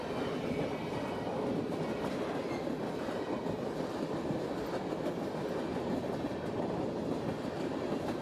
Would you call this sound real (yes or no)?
yes